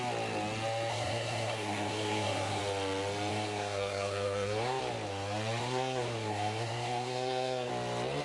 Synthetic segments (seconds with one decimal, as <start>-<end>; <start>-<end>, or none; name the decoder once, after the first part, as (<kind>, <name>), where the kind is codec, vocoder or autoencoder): 0.9-2.6 (codec, SNAC); 3.3-4.8; 5.6-7.7